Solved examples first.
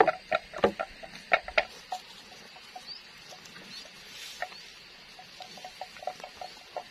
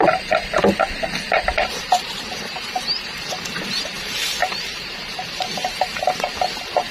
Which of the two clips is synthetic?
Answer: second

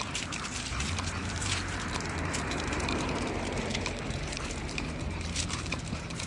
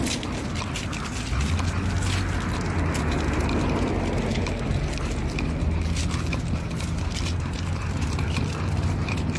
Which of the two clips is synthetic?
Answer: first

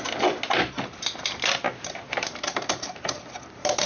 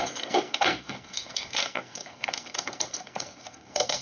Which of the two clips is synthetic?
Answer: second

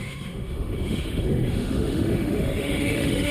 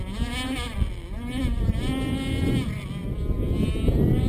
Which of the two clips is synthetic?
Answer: first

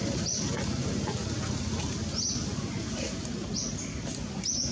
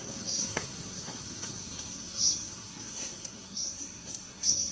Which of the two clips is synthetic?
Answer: second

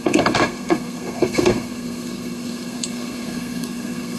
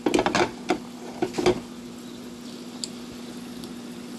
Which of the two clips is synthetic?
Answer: first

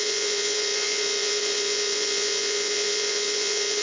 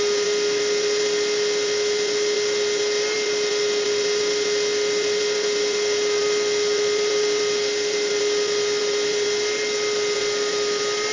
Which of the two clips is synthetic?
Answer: first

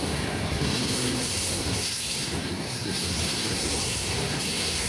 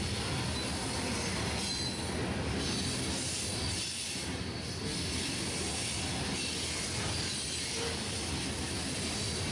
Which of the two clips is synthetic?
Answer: first